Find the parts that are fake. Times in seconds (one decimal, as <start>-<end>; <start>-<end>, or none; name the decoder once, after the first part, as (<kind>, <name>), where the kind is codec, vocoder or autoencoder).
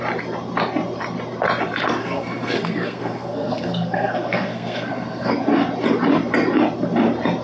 2.0-5.3 (codec, SNAC)